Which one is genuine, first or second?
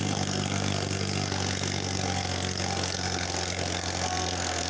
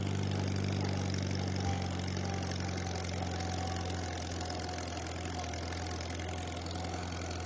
second